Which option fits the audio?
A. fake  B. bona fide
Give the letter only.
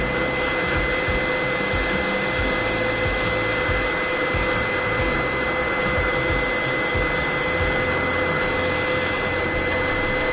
B